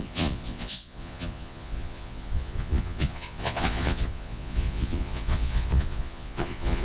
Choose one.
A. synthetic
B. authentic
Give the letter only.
A